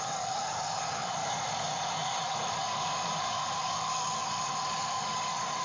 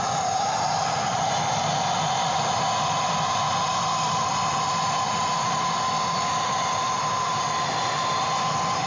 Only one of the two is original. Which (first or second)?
second